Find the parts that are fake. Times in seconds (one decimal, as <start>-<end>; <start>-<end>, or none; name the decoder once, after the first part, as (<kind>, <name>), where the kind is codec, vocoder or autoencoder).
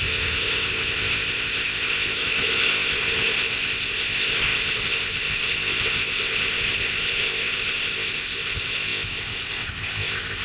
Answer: 0.0-10.4 (codec, ZipCodec)